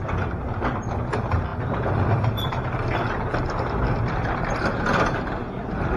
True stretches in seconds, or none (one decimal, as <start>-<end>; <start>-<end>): 0.0-6.0